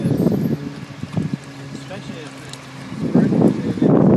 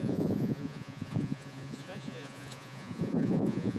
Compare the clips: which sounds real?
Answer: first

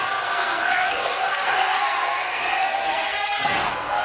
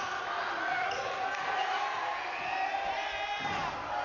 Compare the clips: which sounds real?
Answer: second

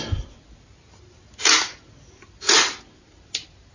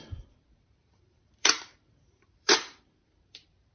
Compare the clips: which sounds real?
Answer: first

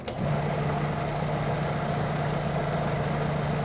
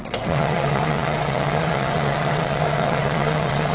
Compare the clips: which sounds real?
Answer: first